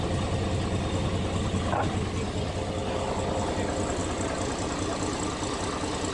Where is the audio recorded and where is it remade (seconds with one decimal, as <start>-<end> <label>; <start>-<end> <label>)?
0.0-6.1 recorded